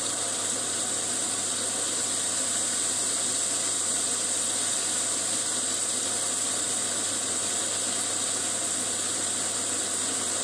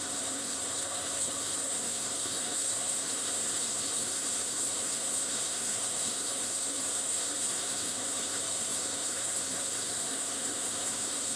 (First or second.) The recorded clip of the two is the first